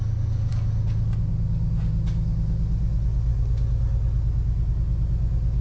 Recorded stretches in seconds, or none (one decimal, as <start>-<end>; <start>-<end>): 0.0-5.6